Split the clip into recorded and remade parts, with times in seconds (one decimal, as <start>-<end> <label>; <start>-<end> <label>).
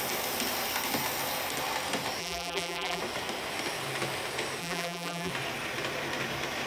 0.0-2.2 recorded; 2.2-3.0 remade; 3.0-4.6 recorded; 4.6-5.3 remade; 5.3-6.7 recorded